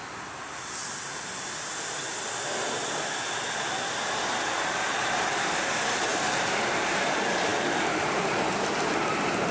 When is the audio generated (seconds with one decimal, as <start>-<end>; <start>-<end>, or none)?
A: none